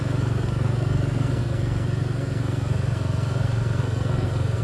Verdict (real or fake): fake